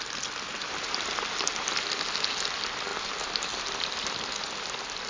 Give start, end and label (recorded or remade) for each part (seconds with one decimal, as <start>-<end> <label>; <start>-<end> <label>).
0.0-5.1 recorded